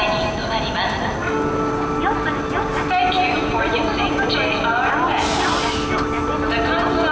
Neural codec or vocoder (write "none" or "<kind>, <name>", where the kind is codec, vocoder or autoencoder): none